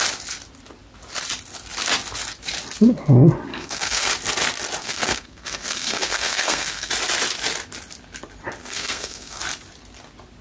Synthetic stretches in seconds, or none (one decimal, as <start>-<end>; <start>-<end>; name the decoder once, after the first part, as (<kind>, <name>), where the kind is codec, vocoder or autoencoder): 3.5-4.1 (codec, SNAC); 4.8-6.9; 8.6-9.4